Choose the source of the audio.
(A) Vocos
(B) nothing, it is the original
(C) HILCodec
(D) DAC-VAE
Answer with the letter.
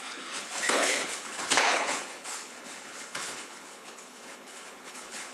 C